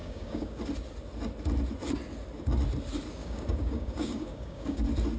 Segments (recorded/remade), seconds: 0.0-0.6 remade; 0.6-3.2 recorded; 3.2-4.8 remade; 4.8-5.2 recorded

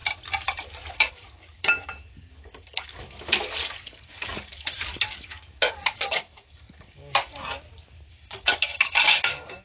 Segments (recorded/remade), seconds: 0.0-0.9 recorded; 0.9-7.3 remade; 7.3-8.1 recorded; 8.1-9.6 remade

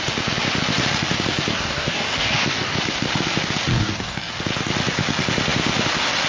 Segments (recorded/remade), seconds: 0.0-1.5 recorded; 1.5-2.8 remade; 2.8-3.7 recorded; 3.7-4.3 remade; 4.3-6.3 recorded

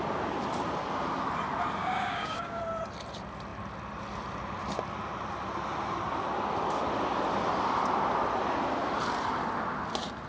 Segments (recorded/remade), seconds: 0.0-1.8 recorded; 1.8-2.6 remade; 2.6-10.3 recorded